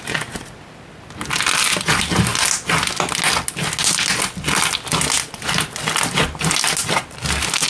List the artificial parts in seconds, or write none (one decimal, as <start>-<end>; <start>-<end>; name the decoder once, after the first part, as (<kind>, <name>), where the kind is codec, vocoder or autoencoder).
none